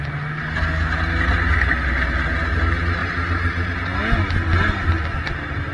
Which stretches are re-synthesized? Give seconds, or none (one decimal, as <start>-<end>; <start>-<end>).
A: 3.0-4.0